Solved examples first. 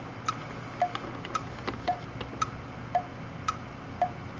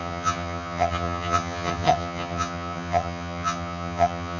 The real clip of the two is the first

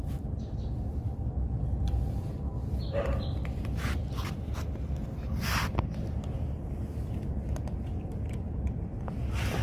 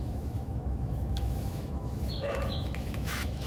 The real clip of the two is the first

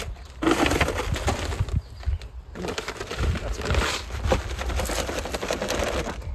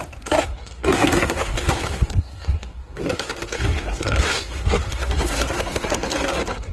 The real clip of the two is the first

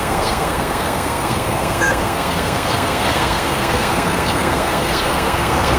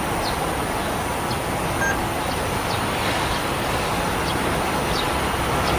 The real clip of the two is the second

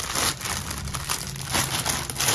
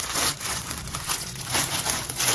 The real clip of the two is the first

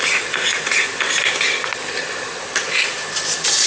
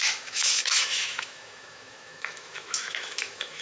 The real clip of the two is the first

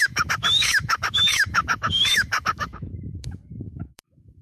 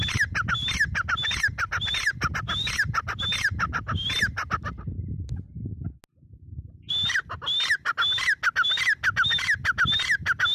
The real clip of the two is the second